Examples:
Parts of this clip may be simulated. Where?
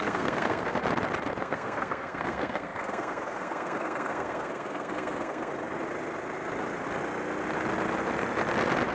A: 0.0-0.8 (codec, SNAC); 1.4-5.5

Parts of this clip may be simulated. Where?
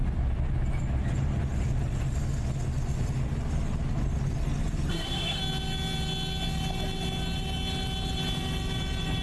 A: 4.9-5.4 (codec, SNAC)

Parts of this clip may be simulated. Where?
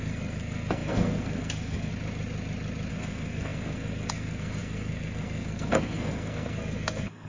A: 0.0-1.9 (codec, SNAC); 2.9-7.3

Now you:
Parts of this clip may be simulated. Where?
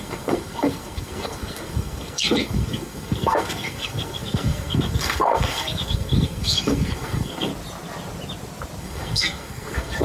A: 0.0-7.5 (codec, SNAC); 8.8-10.0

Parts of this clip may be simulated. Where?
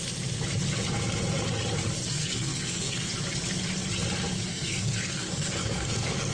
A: 2.2-3.1 (codec, SNAC); 4.5-6.3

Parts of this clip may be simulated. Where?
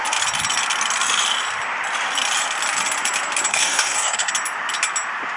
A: 3.5-4.3 (codec, SNAC)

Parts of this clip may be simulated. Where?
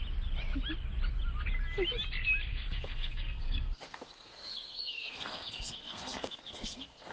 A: 2.5-7.1 (codec, SNAC)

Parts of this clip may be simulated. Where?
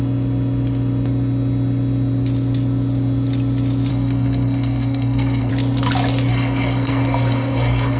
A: 3.9-5.5 (codec, SNAC); 6.3-8.0